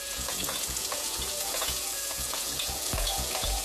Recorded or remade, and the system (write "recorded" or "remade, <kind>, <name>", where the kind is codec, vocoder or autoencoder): remade, vocoder, Vocos